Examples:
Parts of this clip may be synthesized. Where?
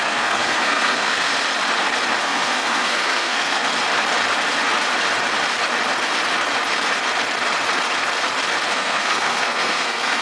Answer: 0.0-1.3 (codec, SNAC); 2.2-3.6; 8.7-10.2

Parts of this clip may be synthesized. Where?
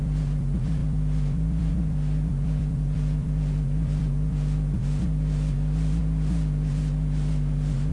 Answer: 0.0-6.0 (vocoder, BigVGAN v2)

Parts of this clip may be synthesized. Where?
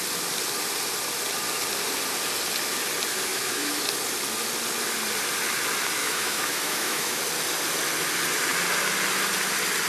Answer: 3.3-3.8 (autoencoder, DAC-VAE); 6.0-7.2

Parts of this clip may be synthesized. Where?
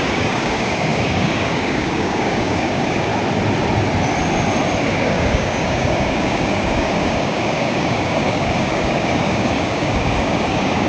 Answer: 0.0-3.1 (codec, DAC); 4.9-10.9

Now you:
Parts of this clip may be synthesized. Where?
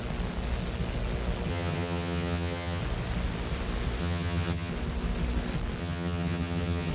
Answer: 1.5-2.8 (vocoder, HiFi-GAN); 4.0-4.7; 5.8-6.9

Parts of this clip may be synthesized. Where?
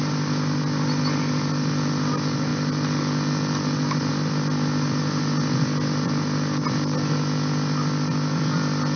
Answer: none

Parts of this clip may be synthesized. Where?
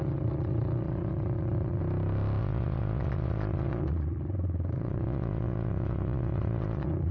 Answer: 0.0-1.8 (vocoder, Vocos); 2.4-7.1